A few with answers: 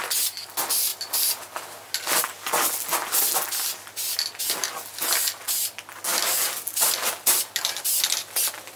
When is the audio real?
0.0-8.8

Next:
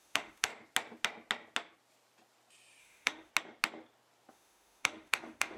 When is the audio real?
0.5-2.8; 3.3-4.3

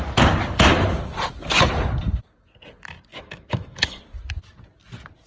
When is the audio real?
0.0-3.1; 4.0-5.3

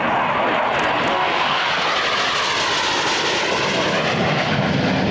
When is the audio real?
0.0-1.1; 1.7-5.1